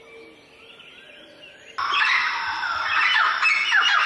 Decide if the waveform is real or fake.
real